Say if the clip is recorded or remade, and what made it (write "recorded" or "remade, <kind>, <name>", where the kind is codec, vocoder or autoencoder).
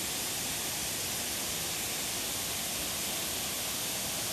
recorded